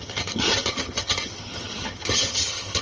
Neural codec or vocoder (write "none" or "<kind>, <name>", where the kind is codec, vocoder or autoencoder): vocoder, HiFi-GAN